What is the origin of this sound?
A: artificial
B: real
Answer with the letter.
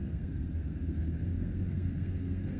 A